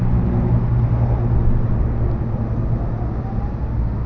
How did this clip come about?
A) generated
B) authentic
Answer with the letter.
B